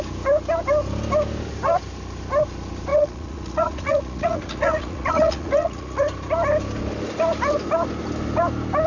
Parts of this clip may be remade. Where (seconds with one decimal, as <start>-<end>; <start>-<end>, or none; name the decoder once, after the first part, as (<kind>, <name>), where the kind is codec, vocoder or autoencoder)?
2.9-6.0 (vocoder, Vocos)